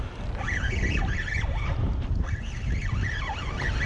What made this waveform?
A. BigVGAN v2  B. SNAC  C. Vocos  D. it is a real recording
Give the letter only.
D